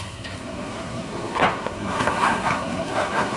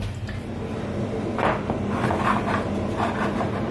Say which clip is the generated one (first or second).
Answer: first